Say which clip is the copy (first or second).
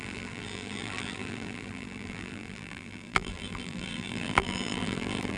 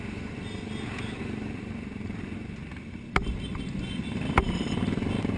first